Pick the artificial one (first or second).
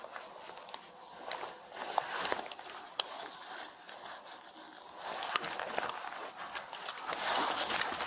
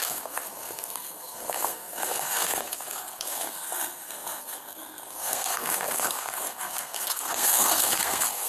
second